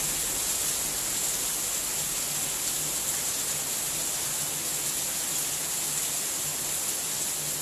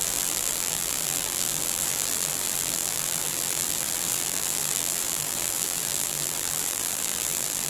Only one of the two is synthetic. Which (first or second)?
second